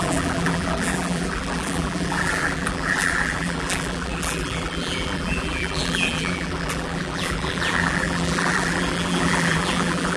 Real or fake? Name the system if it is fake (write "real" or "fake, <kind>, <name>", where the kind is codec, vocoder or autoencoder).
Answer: fake, vocoder, BigVGAN v2